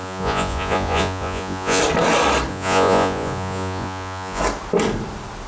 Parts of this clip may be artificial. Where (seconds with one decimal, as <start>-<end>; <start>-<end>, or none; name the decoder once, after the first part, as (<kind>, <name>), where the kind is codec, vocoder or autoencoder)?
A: 0.0-1.8 (vocoder, Vocos); 2.5-4.4